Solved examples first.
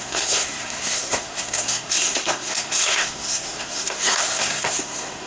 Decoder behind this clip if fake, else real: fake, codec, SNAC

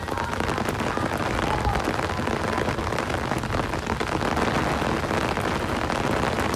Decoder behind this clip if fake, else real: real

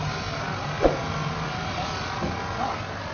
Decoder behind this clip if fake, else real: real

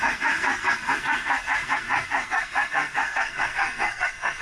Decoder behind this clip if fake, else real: fake, codec, SNAC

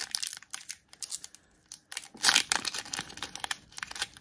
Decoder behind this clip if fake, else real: real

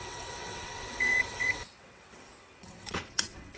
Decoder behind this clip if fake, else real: fake, vocoder, WaveNeXt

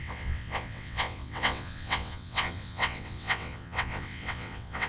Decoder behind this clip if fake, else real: fake, vocoder, WaveNeXt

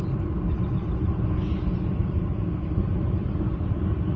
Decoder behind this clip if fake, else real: real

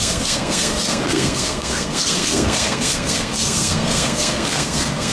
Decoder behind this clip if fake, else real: fake, codec, SNAC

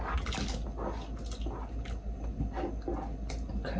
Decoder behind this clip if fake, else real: real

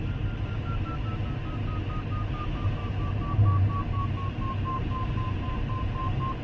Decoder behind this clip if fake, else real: real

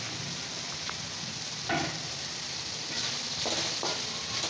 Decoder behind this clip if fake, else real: real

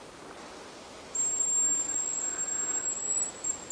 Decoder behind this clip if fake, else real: real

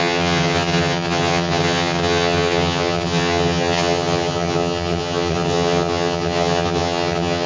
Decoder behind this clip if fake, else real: fake, vocoder, HiFi-GAN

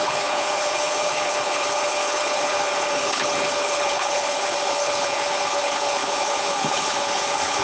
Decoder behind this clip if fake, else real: fake, codec, HILCodec